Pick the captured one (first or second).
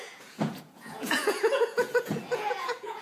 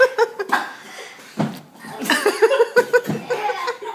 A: second